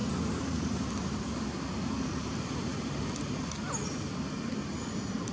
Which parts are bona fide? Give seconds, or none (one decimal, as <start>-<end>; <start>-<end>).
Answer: 0.0-5.3